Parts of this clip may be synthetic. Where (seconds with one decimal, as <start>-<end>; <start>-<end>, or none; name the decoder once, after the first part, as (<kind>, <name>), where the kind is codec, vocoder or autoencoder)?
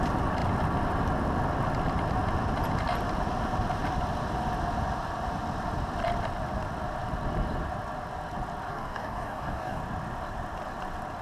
8.7-9.8 (codec, DAC)